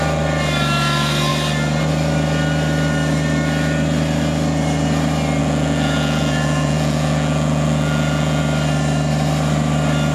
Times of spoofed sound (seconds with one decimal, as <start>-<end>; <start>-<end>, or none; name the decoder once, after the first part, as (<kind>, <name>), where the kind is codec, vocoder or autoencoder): 5.4-8.4 (vocoder, Vocos)